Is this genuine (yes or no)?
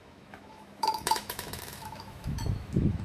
no